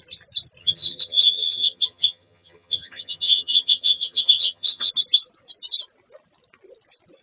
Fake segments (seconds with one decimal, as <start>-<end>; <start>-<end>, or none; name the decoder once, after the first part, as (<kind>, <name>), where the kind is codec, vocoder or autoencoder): 0.6-4.9 (vocoder, HiFi-GAN)